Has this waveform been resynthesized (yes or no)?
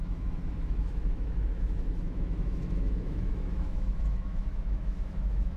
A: yes